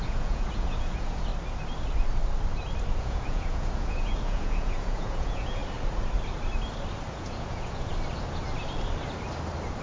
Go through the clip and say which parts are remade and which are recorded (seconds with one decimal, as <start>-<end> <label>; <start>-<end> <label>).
0.0-1.3 remade; 1.3-3.0 recorded; 3.0-5.6 remade; 5.6-7.1 recorded; 7.1-7.9 remade; 7.9-9.8 recorded